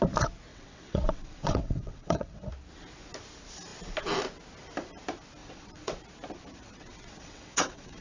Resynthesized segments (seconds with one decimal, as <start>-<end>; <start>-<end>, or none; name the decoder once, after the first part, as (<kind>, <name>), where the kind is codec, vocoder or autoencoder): 0.5-2.5 (vocoder, WaveNeXt); 5.4-6.0; 6.5-8.0